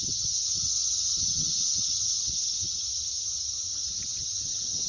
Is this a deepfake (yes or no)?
yes